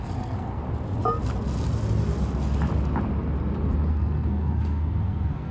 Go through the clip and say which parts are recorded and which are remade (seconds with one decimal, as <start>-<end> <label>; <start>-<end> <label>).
0.0-0.6 remade; 0.6-3.9 recorded; 3.9-5.5 remade